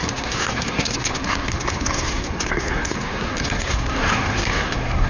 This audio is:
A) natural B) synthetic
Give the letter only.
B